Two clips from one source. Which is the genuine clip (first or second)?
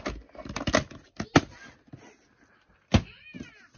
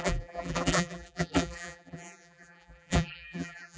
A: first